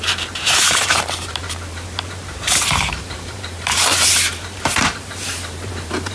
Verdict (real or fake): fake